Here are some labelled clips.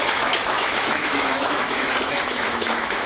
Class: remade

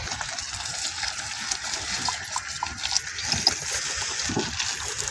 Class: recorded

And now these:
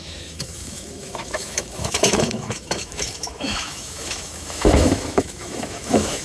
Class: remade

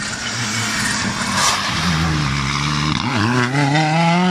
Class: recorded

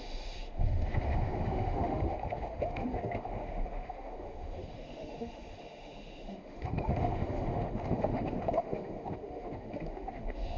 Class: remade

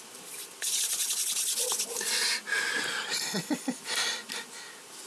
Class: recorded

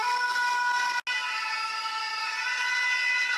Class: recorded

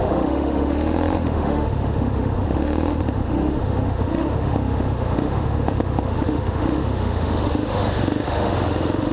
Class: remade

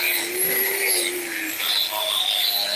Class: recorded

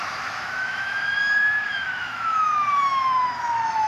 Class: remade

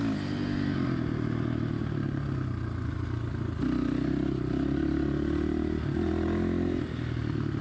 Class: recorded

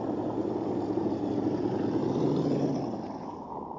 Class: recorded